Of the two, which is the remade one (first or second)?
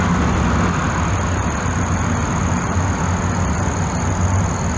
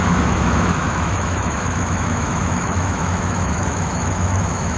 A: second